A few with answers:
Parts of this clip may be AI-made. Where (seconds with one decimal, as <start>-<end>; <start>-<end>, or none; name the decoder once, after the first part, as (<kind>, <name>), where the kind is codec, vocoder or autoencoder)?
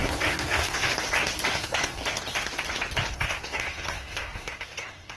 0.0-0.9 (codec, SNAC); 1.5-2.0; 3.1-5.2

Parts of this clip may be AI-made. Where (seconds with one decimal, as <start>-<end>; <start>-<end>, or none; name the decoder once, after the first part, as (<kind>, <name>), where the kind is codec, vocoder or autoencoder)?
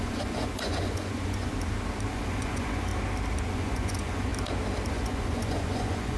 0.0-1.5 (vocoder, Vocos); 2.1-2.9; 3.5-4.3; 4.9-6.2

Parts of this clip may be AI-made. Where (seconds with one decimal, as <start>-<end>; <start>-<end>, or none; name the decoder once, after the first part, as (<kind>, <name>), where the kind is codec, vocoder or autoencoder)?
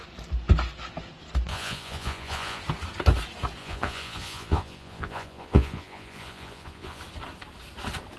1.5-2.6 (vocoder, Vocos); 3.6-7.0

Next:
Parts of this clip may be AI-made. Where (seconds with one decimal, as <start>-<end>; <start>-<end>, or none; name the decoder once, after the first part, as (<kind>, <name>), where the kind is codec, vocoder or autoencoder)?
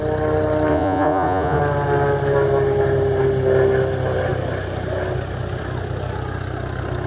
0.7-1.6 (vocoder, Vocos)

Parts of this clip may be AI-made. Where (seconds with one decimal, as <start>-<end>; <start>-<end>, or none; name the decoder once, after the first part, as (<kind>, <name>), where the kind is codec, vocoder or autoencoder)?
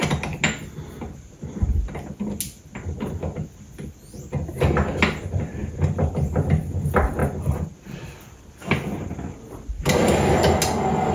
5.6-6.1 (vocoder, BigVGAN v2)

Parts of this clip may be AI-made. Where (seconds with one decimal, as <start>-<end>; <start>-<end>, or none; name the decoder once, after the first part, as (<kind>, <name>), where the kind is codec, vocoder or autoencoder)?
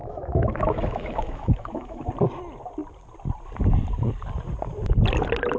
0.0-2.1 (autoencoder, DAC-VAE)